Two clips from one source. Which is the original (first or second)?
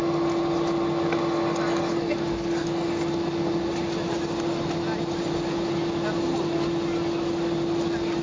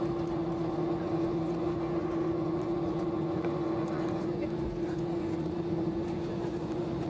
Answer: first